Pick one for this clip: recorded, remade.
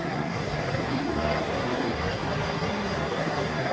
remade